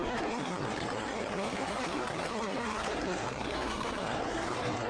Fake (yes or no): yes